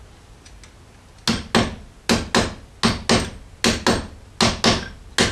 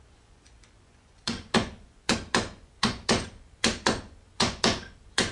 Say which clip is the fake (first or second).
second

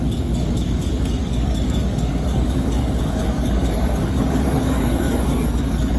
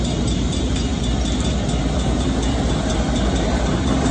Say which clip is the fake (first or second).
first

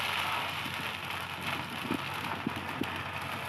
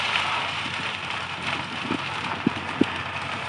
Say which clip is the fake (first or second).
second